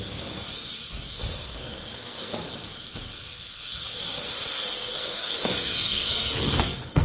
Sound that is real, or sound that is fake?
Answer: fake